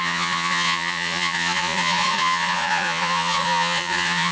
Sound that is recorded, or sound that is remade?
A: remade